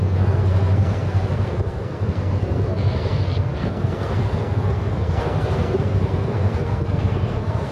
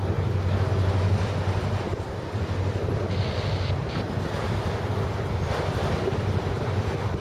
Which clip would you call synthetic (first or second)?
first